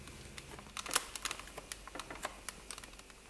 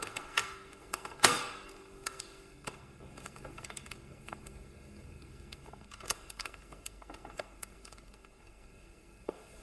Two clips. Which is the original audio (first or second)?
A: first